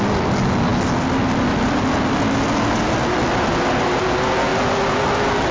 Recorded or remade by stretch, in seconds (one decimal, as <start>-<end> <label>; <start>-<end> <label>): 0.0-5.5 recorded